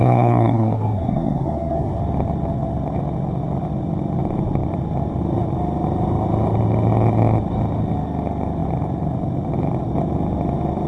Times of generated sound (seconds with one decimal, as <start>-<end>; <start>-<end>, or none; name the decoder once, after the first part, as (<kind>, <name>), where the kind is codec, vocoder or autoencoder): 0.0-2.0 (codec, SNAC)